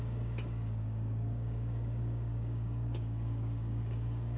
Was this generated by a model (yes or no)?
yes